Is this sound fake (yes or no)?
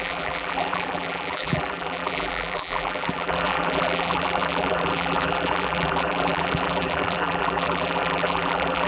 yes